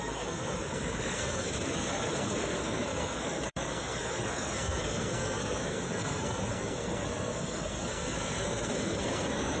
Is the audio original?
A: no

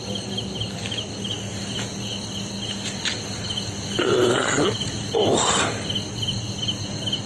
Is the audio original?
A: yes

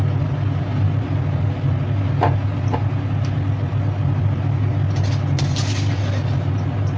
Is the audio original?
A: yes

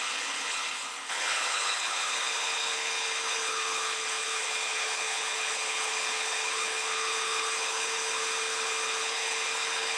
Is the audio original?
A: no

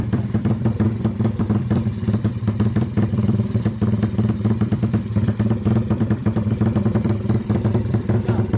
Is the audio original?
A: no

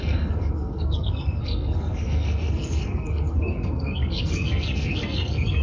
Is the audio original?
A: no